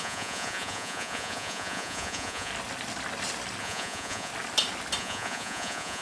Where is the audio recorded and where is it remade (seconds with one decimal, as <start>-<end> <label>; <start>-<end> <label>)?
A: 0.0-2.5 remade; 2.5-3.6 recorded; 3.6-4.3 remade; 4.3-5.0 recorded; 5.0-6.0 remade